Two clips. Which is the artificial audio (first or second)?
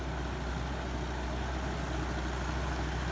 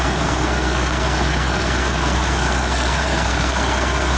second